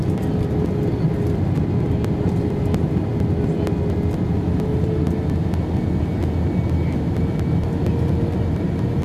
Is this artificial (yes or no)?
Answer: no